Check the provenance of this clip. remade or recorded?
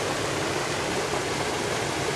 recorded